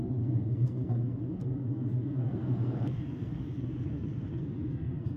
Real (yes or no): no